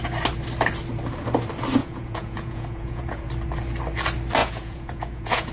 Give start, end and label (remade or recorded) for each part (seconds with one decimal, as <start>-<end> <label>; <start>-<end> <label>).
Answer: 0.0-1.8 recorded; 1.8-3.3 remade; 3.3-4.4 recorded; 4.4-5.5 remade